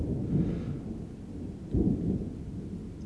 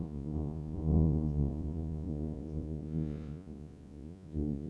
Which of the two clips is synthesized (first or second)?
second